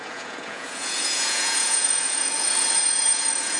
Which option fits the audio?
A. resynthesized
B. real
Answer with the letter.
A